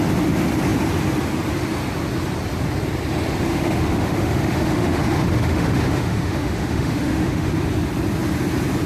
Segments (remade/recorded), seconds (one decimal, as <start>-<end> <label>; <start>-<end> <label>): 0.0-3.5 recorded; 3.5-7.5 remade; 7.5-8.9 recorded